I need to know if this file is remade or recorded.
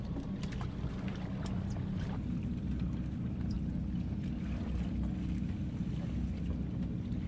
recorded